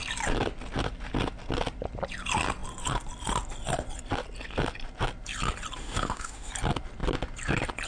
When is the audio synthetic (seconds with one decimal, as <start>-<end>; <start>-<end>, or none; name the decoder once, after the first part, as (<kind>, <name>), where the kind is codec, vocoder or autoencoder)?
5.8-6.5 (autoencoder, DAC-VAE)